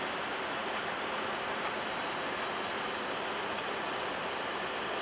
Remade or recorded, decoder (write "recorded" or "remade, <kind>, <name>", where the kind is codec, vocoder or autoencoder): recorded